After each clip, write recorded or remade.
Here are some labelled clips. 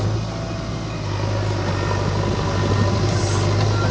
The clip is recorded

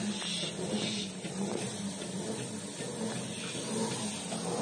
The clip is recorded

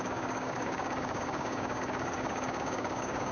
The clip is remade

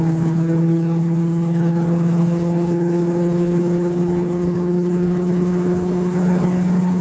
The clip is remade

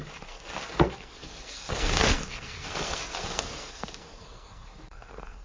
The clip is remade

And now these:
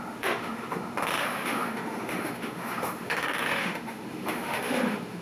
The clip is remade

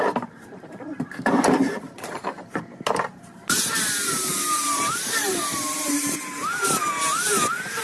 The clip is remade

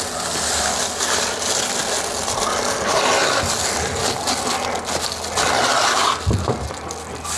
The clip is recorded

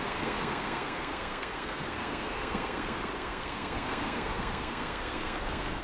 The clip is remade